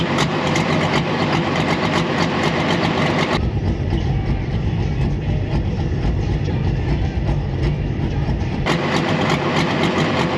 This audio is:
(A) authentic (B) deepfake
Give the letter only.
B